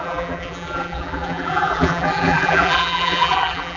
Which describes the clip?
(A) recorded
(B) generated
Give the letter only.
B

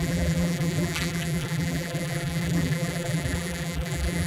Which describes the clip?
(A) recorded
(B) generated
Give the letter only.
B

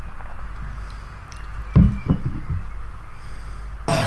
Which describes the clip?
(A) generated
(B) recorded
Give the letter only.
B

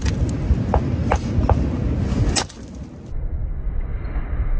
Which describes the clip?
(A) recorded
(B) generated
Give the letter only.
A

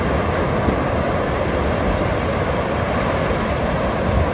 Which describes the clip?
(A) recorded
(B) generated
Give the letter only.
B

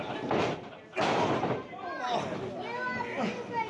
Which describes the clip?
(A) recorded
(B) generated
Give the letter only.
A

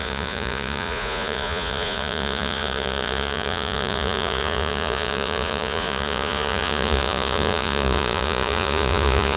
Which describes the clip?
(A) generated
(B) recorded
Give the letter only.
A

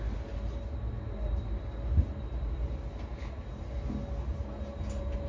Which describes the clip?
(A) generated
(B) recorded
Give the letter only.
B